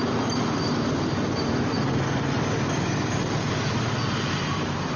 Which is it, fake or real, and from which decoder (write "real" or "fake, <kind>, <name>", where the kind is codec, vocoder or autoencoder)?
real